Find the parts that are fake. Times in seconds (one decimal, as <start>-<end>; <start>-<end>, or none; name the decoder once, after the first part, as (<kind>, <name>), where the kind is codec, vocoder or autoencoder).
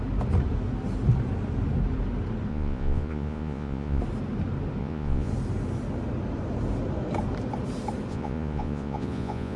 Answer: 2.5-4.0 (vocoder, Vocos); 4.8-5.3; 8.1-9.6